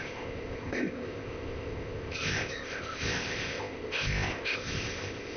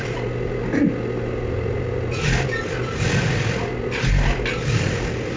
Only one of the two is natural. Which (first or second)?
second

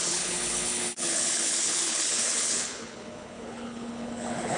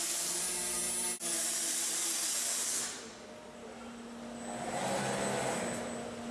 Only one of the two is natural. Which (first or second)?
second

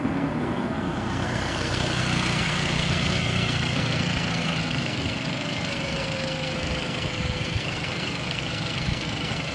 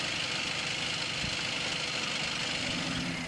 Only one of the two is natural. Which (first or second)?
second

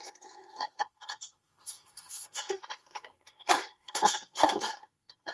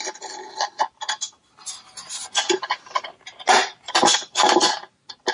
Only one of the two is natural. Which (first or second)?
second